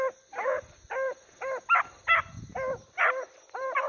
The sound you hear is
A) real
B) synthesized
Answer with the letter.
A